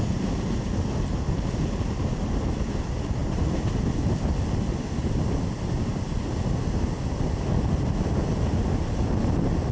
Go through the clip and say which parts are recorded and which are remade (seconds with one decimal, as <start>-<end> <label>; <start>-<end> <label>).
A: 0.0-9.7 recorded